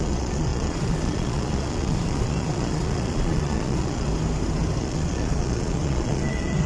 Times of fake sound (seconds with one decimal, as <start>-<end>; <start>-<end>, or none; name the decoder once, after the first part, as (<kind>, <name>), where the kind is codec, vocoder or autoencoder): 0.0-4.1 (vocoder, Vocos); 4.8-6.7